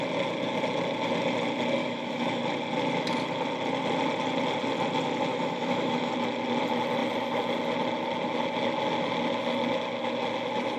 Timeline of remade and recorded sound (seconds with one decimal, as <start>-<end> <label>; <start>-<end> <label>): 0.0-1.8 recorded; 1.8-2.4 remade; 2.4-5.3 recorded; 5.3-6.1 remade; 6.1-10.8 recorded